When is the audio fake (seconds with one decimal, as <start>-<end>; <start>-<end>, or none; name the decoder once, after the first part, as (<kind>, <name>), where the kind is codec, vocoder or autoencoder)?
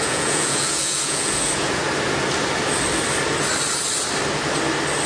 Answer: 0.0-1.8 (vocoder, Vocos)